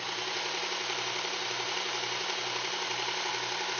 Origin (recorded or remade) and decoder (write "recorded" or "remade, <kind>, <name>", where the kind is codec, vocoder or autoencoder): recorded